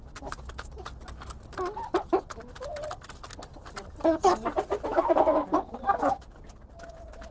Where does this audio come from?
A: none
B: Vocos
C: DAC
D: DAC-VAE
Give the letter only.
A